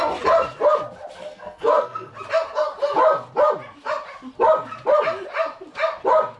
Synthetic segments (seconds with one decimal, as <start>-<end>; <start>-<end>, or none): 1.2-2.1

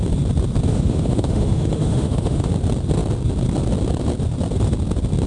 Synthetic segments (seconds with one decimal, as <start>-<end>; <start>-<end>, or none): 0.7-2.5

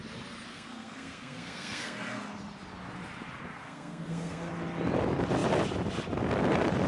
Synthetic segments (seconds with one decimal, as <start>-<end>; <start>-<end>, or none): 0.5-2.3; 3.5-4.5

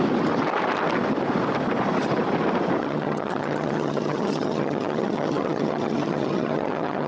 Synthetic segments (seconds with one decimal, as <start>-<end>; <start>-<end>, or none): 2.8-7.1

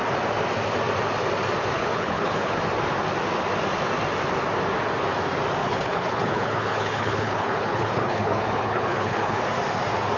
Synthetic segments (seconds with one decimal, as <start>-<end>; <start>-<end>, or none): 1.7-2.6; 5.6-9.4